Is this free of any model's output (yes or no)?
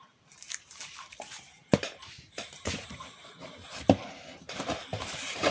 no